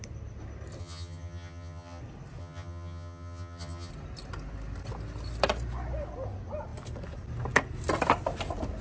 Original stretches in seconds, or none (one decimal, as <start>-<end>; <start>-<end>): 0.0-0.8; 2.0-2.4; 3.9-8.8